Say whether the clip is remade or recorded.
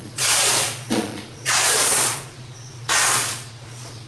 remade